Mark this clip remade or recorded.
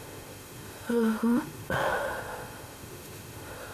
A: remade